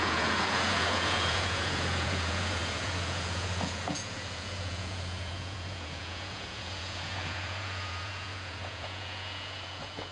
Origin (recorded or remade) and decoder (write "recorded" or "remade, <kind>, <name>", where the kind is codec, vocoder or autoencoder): remade, vocoder, Vocos